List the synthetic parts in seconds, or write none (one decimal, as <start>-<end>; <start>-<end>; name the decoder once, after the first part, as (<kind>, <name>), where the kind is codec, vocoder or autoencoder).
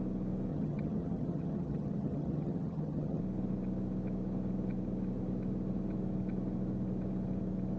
0.5-3.2 (vocoder, HiFi-GAN)